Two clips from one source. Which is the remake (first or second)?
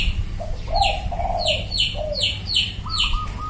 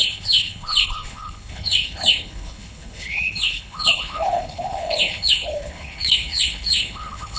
second